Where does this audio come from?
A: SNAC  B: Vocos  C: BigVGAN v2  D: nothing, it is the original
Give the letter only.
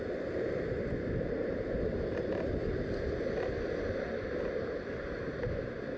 D